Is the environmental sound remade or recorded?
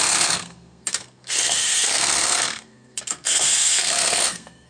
remade